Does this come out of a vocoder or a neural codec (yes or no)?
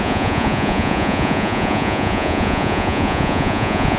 yes